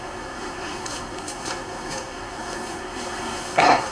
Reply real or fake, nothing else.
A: fake